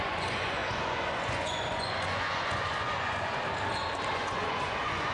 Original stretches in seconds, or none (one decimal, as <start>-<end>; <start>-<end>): 3.4-4.1